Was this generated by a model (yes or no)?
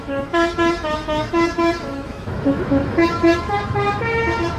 yes